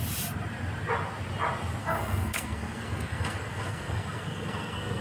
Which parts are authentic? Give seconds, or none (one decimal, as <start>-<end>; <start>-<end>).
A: 0.0-1.8